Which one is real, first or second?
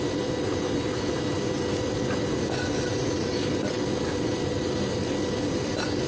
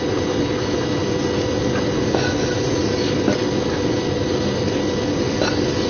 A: second